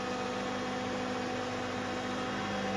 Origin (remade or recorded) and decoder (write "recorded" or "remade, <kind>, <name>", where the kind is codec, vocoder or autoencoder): recorded